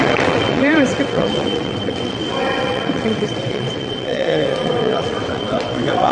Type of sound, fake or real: fake